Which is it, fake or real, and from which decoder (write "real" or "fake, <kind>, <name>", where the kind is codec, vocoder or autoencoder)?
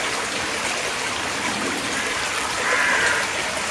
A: real